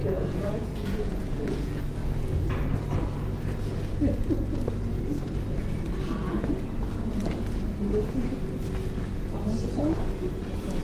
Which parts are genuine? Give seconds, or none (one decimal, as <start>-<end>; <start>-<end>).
1.8-10.8